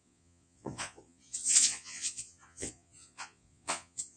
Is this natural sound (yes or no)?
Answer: no